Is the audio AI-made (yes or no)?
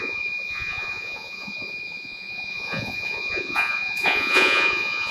yes